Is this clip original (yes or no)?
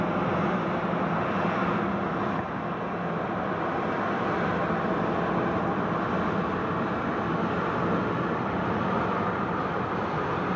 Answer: yes